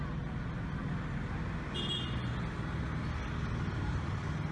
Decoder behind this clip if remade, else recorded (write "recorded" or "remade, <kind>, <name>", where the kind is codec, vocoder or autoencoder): recorded